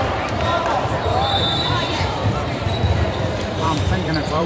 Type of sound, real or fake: fake